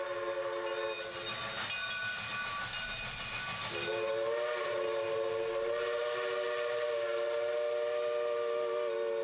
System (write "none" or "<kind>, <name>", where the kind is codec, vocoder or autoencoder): none